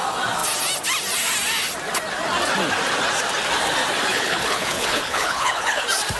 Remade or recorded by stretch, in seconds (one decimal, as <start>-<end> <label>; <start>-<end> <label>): 0.0-4.1 recorded; 4.1-5.8 remade; 5.8-6.2 recorded